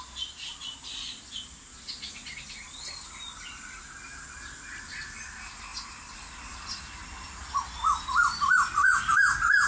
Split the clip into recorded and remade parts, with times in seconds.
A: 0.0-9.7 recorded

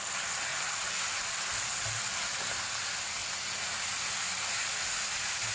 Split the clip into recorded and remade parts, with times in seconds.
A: 0.0-5.5 recorded

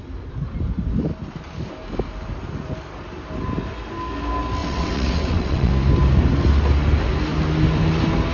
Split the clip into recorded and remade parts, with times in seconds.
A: 0.0-4.6 recorded; 4.6-5.7 remade; 5.7-8.3 recorded

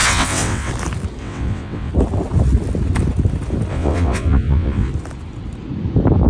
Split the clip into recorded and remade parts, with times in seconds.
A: 0.0-0.7 remade; 0.7-1.2 recorded; 1.2-1.9 remade; 1.9-3.7 recorded; 3.7-4.9 remade; 4.9-6.3 recorded

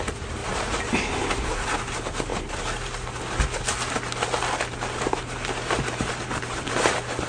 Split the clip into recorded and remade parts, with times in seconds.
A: 0.0-7.3 recorded

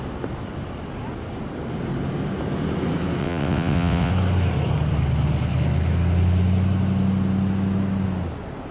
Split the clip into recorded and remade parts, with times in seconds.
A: 0.0-3.2 recorded; 3.2-4.1 remade; 4.1-8.7 recorded

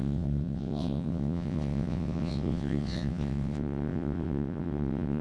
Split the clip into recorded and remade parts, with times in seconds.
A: 0.0-5.2 remade